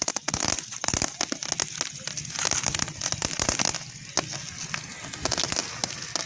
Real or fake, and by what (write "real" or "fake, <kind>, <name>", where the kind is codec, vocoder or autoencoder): real